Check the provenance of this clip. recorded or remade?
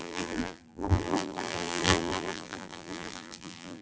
remade